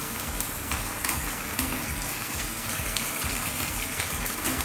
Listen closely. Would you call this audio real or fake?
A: fake